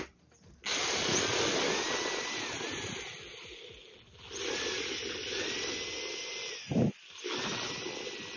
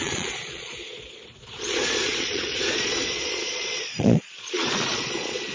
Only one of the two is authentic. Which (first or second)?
first